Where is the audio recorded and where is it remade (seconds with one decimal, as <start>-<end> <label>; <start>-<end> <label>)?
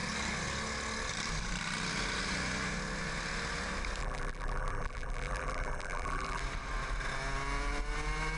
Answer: 0.0-4.0 recorded; 4.0-6.4 remade; 6.4-8.4 recorded